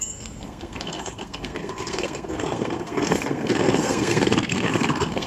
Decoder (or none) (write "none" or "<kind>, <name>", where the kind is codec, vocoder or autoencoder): codec, SNAC